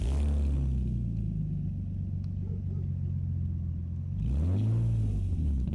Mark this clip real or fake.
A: real